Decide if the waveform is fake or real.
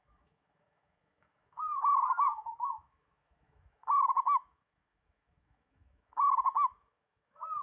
fake